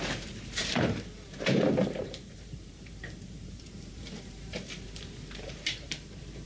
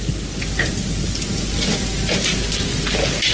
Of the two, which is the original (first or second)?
second